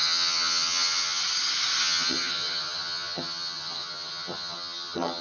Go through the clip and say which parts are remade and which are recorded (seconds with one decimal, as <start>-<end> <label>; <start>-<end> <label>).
0.0-1.2 remade; 1.2-1.8 recorded; 1.8-5.2 remade